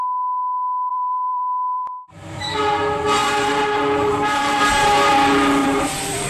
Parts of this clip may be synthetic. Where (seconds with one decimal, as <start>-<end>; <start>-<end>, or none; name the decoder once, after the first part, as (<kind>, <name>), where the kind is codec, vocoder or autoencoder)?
0.9-2.6 (vocoder, BigVGAN v2); 3.2-4.6; 5.6-6.3